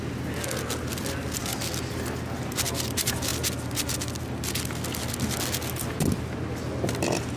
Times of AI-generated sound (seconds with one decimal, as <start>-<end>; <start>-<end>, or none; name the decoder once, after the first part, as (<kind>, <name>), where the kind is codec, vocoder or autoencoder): none